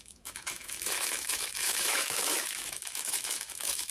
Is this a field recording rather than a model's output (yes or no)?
no